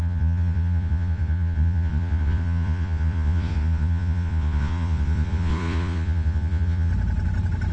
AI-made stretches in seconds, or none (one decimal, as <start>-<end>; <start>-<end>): 0.0-6.9